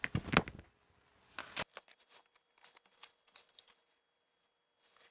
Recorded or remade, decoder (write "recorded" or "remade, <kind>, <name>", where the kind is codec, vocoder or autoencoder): recorded